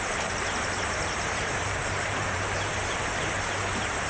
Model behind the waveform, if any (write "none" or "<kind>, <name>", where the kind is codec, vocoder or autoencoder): vocoder, BigVGAN v2